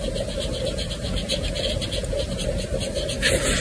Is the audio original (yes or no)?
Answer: yes